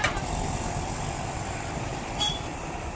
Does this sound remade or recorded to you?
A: remade